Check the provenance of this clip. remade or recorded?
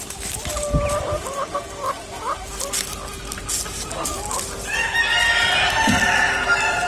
recorded